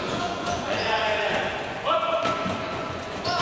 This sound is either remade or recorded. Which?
remade